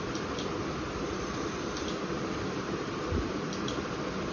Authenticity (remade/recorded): recorded